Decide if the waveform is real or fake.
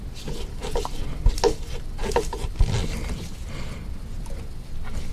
real